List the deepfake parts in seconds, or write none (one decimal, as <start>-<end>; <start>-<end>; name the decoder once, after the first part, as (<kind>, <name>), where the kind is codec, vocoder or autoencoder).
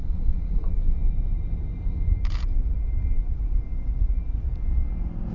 0.0-0.6 (vocoder, Vocos)